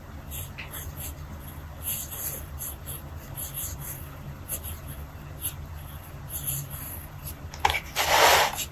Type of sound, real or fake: real